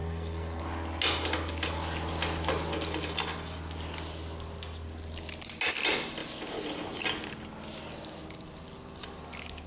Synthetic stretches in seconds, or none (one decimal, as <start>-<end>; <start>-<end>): 0.0-0.6